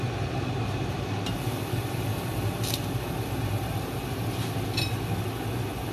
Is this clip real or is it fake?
real